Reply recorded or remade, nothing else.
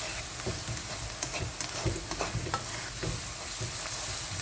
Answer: recorded